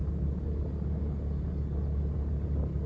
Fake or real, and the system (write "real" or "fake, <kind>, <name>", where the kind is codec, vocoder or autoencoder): real